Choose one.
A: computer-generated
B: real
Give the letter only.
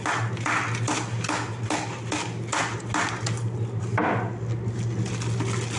B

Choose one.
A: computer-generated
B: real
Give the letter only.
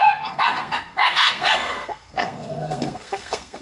A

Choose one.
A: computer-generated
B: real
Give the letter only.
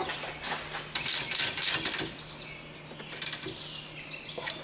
B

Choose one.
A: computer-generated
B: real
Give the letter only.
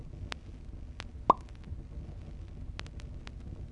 B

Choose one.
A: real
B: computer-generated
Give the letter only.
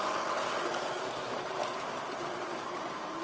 A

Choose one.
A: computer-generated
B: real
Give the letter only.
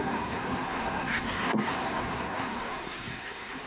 A